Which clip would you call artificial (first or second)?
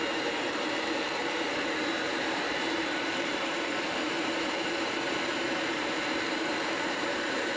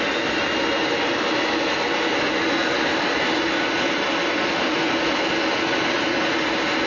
first